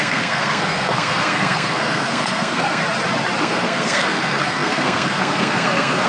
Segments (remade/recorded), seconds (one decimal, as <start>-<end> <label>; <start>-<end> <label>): 0.0-2.8 remade; 2.8-3.4 recorded; 3.4-6.1 remade